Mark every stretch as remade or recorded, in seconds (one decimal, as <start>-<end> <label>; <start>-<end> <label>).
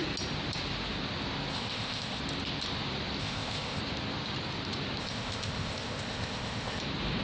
0.0-1.5 recorded; 1.5-2.2 remade; 2.2-3.2 recorded; 3.2-3.8 remade; 3.8-5.0 recorded; 5.0-6.8 remade; 6.8-7.2 recorded